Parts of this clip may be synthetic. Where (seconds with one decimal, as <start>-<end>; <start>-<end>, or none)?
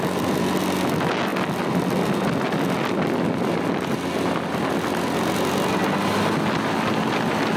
none